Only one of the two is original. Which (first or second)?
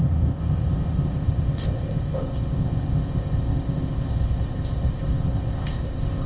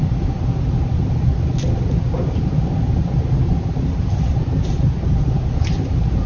second